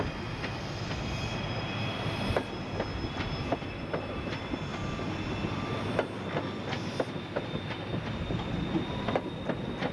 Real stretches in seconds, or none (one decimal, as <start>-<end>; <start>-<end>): 0.0-9.9